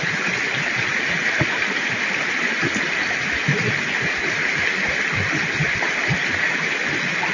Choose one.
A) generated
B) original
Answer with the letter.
B